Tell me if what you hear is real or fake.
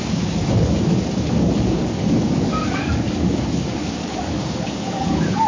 fake